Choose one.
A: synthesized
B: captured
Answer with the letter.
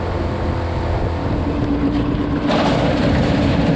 B